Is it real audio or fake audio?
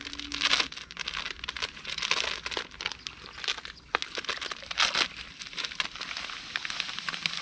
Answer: real